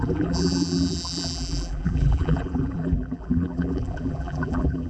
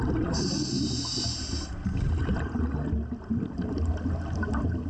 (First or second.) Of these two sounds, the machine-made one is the first